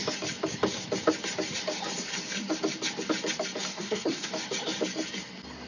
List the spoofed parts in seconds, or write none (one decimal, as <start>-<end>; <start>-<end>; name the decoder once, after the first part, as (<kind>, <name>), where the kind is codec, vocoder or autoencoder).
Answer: 3.7-4.3 (codec, SNAC)